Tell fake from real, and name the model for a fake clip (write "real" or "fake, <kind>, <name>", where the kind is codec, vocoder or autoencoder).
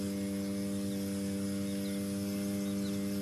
real